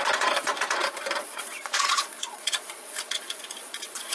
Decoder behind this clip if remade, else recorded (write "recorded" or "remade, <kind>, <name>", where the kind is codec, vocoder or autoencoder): remade, vocoder, Vocos